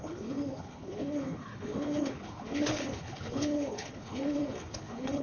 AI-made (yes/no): yes